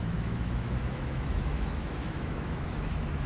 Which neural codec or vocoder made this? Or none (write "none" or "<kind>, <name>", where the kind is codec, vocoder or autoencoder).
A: autoencoder, DAC-VAE